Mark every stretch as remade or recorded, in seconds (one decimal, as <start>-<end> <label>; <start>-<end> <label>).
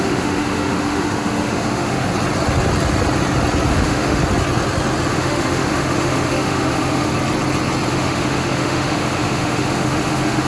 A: 0.0-2.1 remade; 2.1-3.7 recorded; 3.7-4.2 remade; 4.2-5.1 recorded; 5.1-7.1 remade; 7.1-7.9 recorded; 7.9-10.5 remade